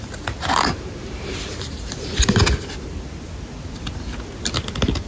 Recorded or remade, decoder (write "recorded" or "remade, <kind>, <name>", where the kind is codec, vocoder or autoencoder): recorded